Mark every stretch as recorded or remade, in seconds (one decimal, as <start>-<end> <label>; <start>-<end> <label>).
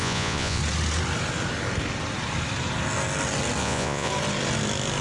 0.0-0.6 remade; 0.6-3.6 recorded; 3.6-4.1 remade; 4.1-5.0 recorded